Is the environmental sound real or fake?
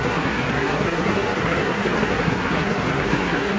fake